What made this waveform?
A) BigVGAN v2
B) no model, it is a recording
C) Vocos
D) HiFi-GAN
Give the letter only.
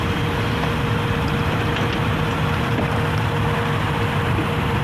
A